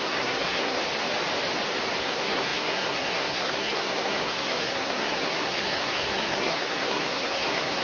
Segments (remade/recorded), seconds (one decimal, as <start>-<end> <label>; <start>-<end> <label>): 0.0-0.8 remade; 0.8-2.0 recorded; 2.0-7.8 remade